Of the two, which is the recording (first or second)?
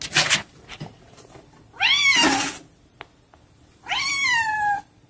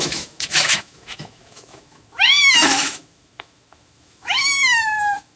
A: first